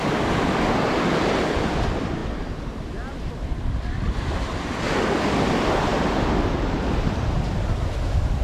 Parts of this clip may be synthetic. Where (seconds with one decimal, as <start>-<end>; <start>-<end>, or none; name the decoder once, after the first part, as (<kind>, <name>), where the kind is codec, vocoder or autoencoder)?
0.0-5.9 (vocoder, BigVGAN v2); 7.3-8.4